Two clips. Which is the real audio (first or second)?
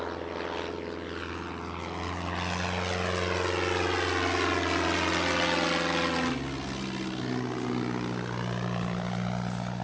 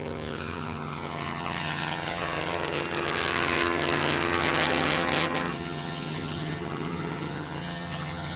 first